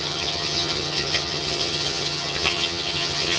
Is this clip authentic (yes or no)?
no